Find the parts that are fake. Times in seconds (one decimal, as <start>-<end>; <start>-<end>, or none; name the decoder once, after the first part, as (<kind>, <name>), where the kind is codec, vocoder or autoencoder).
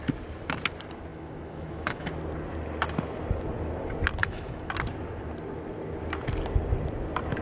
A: 1.1-2.1 (autoencoder, DAC-VAE); 4.2-4.7